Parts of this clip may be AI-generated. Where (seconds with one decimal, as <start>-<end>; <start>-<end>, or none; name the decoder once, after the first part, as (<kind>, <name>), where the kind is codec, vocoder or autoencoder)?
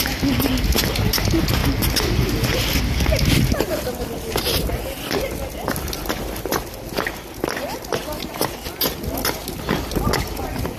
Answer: none